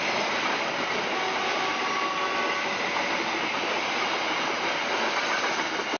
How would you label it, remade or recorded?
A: recorded